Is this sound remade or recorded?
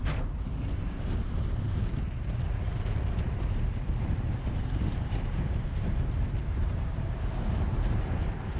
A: remade